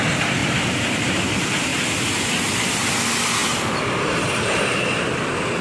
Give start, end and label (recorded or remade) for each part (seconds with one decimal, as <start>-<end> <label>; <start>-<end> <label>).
0.0-1.7 recorded; 1.7-2.3 remade; 2.3-3.4 recorded; 3.4-4.7 remade; 4.7-5.6 recorded